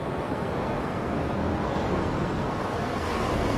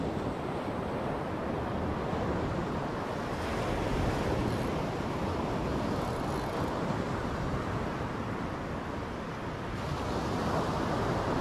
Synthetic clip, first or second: first